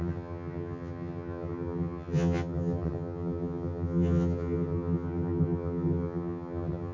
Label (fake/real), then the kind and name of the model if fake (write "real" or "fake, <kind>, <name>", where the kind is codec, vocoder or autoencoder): fake, vocoder, HiFi-GAN